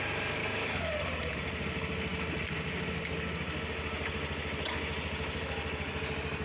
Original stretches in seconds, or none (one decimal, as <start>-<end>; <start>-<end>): 0.0-0.4; 0.9-6.4